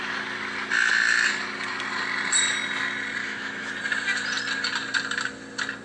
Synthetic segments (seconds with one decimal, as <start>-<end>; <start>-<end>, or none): 3.2-3.7